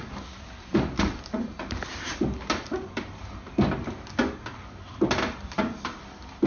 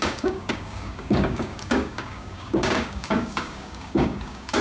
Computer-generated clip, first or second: second